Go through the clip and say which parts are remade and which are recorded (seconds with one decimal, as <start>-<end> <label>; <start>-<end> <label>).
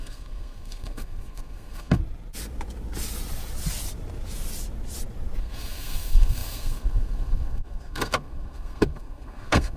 0.0-2.0 remade; 2.0-5.4 recorded; 5.4-9.8 remade